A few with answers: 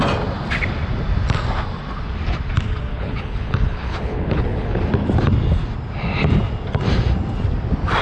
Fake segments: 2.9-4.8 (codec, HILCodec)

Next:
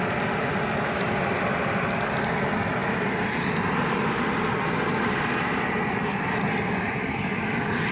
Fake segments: none